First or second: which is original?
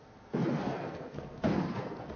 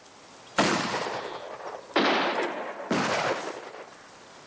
second